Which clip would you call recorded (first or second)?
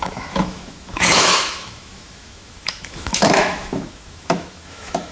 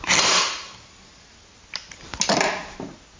second